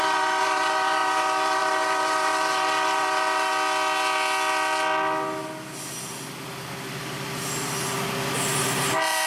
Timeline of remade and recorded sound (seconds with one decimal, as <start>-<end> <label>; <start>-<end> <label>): 0.0-3.5 remade; 3.5-8.6 recorded; 8.6-9.3 remade